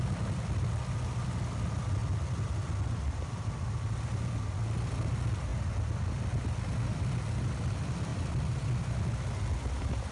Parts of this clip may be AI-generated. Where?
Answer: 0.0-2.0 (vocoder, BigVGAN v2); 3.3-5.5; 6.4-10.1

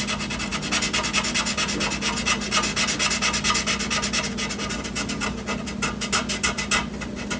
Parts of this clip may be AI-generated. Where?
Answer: none

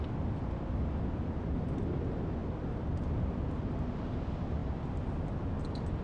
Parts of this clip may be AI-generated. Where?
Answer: none

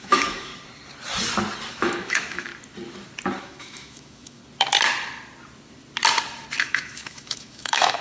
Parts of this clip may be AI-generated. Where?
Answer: 0.0-0.5 (autoencoder, DAC-VAE); 1.7-2.5; 3.4-4.4; 6.6-8.0

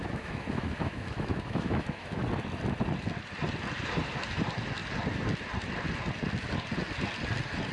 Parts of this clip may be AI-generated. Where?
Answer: 0.0-2.2 (autoencoder, DAC-VAE)